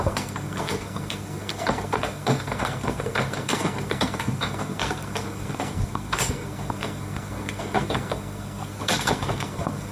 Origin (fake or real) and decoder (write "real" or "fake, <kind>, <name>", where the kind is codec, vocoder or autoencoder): fake, codec, SNAC